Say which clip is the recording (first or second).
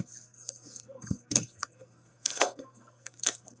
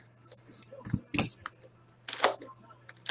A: second